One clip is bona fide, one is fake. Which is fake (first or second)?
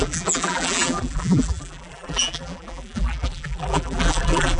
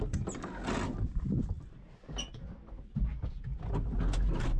first